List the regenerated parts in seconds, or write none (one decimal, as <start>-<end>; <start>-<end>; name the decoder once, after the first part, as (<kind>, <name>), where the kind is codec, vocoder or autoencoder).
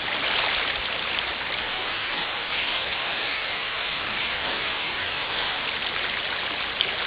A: 1.6-5.6 (codec, DAC)